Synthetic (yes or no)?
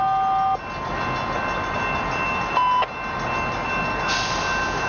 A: no